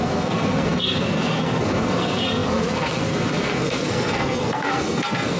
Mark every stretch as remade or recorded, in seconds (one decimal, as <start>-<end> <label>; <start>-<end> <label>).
0.0-5.4 remade